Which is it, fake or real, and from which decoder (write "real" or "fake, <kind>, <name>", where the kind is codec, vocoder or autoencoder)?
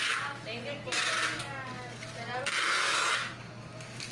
real